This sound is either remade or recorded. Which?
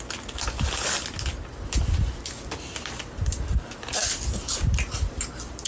recorded